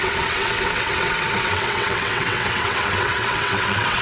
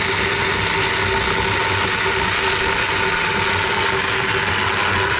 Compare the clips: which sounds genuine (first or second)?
second